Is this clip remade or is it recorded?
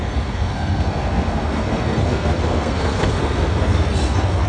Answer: remade